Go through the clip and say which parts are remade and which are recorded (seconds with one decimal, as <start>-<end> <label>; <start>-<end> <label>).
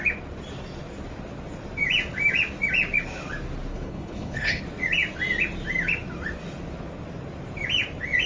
0.0-3.7 recorded; 3.7-4.6 remade; 4.6-8.3 recorded